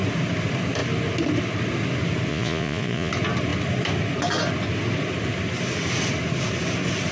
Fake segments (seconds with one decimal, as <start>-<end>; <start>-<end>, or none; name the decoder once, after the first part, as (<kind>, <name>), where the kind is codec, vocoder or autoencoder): 2.3-3.1 (vocoder, Vocos)